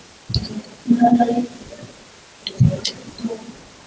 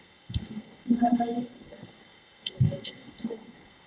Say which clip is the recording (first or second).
first